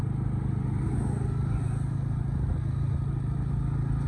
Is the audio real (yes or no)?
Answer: yes